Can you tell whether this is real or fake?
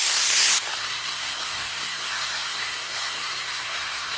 fake